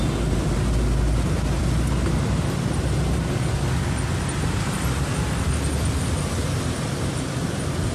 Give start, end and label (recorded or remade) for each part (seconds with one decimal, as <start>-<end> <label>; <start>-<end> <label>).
0.0-7.9 recorded